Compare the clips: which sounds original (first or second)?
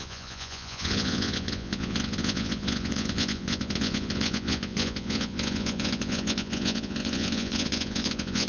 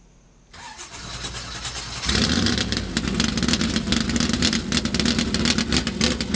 second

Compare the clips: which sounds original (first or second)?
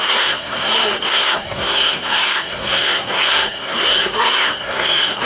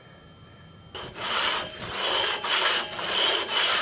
second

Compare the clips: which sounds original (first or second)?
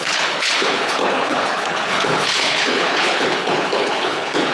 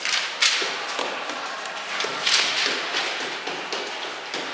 second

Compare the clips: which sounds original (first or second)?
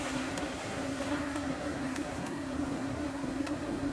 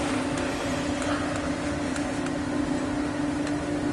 second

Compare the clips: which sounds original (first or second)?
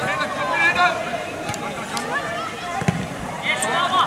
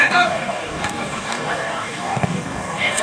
first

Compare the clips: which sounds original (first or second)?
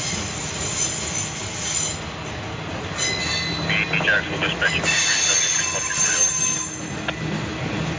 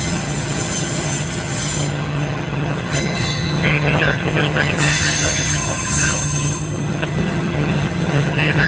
first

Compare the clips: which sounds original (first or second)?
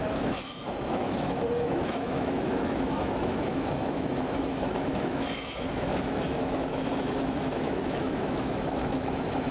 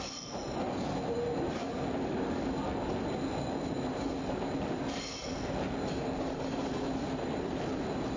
second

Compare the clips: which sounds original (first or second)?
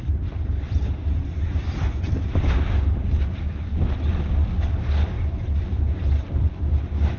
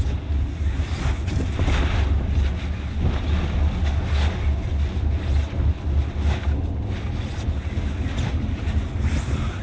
second